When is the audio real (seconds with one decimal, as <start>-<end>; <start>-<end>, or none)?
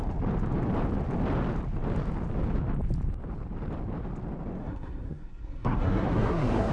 0.0-4.6